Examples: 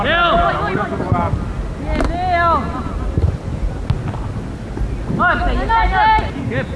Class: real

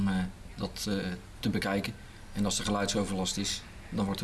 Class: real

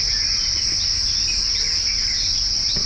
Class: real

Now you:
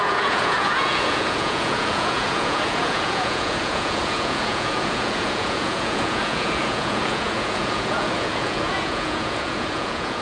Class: fake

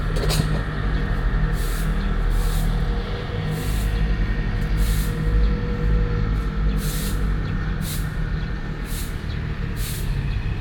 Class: real